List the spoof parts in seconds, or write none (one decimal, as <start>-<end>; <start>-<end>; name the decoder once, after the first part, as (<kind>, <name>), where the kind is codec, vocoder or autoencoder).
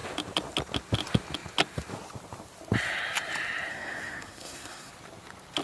3.7-4.9 (codec, SNAC)